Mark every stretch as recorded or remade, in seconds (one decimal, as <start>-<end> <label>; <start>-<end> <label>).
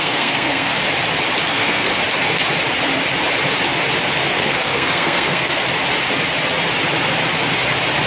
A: 0.0-0.7 remade; 0.7-1.5 recorded; 1.5-1.9 remade; 1.9-4.3 recorded; 4.3-5.6 remade; 5.6-8.1 recorded